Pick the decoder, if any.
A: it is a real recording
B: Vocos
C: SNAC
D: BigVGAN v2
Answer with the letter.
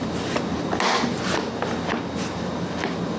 A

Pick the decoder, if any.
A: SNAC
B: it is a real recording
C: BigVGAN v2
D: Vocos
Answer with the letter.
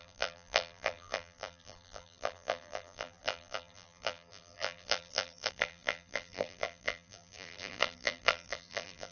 C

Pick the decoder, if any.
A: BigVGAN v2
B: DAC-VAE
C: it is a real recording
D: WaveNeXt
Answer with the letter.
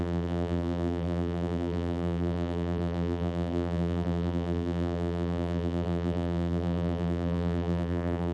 A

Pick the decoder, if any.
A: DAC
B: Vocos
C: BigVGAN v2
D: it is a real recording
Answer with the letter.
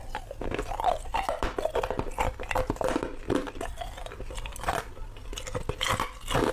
D